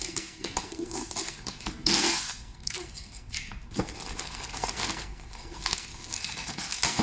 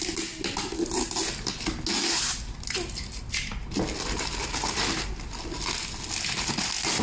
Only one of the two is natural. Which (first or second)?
second